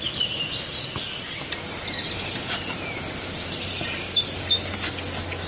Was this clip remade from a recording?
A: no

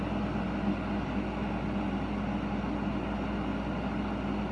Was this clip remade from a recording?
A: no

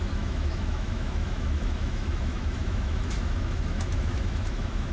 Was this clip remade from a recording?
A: yes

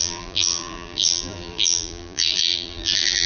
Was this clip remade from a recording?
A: yes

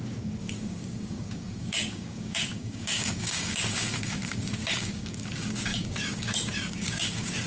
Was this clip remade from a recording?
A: yes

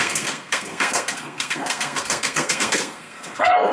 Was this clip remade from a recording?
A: yes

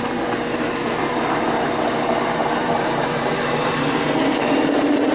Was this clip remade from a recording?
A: yes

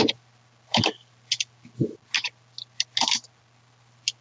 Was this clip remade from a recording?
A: no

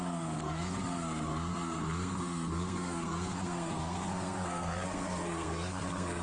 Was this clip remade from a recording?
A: yes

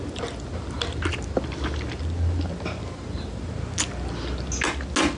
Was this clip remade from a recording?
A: no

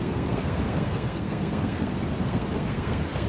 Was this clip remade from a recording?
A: yes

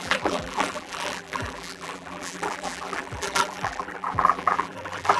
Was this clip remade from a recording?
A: yes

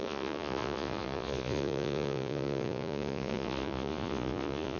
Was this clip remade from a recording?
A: yes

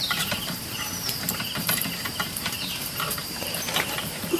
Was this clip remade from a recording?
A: yes